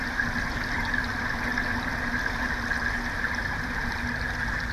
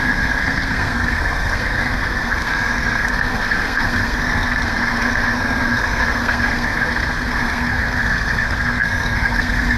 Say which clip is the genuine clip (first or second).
first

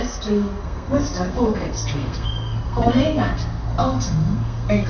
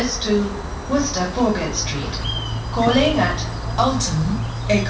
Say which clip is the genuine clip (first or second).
second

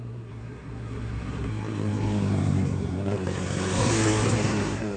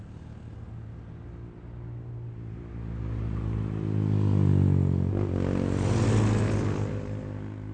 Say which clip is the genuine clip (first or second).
second